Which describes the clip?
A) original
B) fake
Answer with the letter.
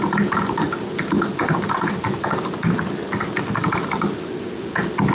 A